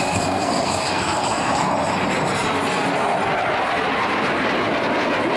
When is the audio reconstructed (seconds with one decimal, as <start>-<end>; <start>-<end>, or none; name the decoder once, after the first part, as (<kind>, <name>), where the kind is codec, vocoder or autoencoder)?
0.0-1.7 (codec, SNAC)